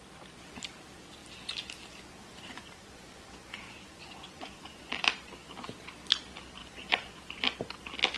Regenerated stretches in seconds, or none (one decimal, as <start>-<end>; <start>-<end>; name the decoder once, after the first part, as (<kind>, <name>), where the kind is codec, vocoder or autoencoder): 2.2-4.9 (vocoder, Vocos); 6.6-7.2